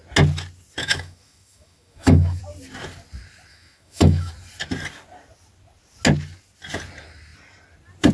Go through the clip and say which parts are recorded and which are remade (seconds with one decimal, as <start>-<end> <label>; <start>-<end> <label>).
0.0-0.8 recorded; 0.8-2.4 remade; 2.4-3.5 recorded; 3.5-4.3 remade; 4.3-8.1 recorded

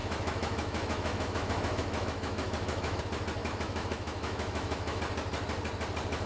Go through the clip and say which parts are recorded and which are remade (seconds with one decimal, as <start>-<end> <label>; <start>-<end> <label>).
0.0-3.0 remade; 3.0-3.4 recorded; 3.4-5.0 remade; 5.0-6.3 recorded

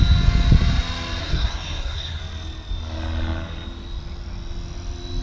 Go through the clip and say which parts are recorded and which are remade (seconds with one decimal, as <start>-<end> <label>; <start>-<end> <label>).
0.0-1.2 recorded; 1.2-2.2 remade; 2.2-5.2 recorded

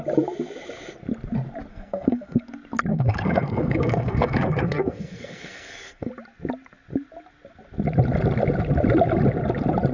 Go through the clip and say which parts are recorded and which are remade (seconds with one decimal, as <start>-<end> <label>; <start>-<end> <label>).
0.0-1.7 recorded; 1.7-2.4 remade; 2.4-2.9 recorded; 2.9-6.1 remade; 6.1-9.9 recorded

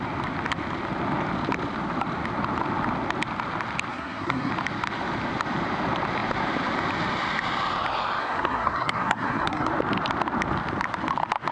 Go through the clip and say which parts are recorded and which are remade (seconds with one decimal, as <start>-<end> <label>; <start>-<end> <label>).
0.0-3.9 recorded; 3.9-4.5 remade; 4.5-8.2 recorded; 8.2-9.7 remade; 9.7-11.5 recorded